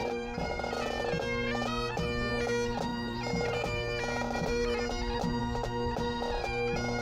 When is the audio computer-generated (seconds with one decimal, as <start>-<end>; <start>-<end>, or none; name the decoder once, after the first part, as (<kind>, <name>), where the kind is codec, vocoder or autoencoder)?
0.0-0.5 (vocoder, BigVGAN v2); 2.9-5.4